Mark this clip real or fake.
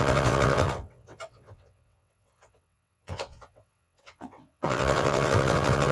fake